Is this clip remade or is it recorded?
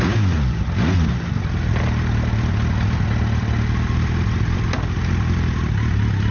recorded